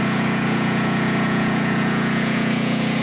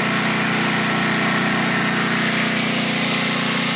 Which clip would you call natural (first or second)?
second